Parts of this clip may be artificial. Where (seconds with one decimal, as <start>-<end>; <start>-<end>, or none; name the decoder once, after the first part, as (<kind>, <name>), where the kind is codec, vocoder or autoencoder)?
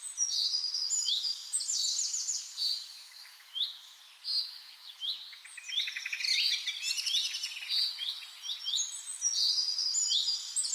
1.0-1.6 (autoencoder, DAC-VAE); 2.9-5.2